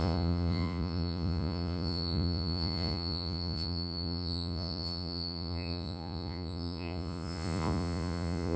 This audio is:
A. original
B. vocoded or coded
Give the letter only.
B